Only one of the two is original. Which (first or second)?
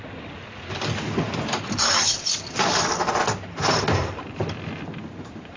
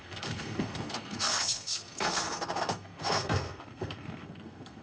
first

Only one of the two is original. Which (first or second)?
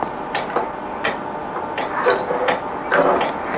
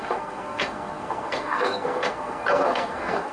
first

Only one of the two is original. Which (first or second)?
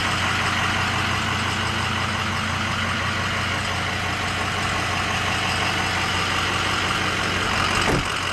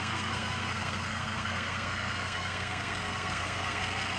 first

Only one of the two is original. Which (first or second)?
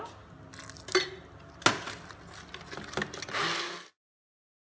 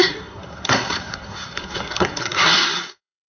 first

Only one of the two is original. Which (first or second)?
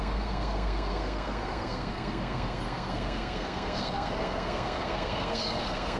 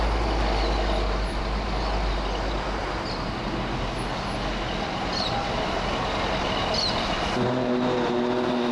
second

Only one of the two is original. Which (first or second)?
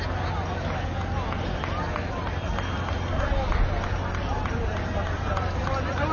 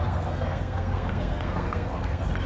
first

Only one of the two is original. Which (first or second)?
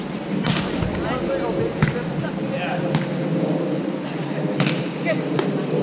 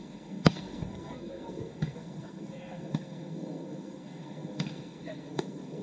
first